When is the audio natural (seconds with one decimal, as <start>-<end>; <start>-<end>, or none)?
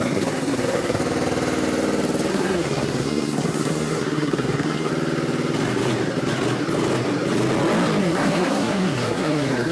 1.0-2.3; 4.9-8.0